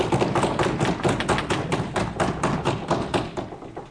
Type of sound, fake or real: real